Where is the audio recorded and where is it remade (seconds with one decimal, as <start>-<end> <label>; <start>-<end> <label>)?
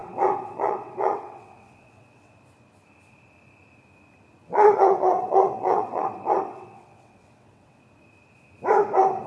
0.0-2.3 remade; 2.3-4.4 recorded; 4.4-7.8 remade; 7.8-9.3 recorded